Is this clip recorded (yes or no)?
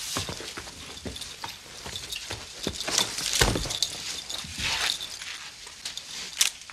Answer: yes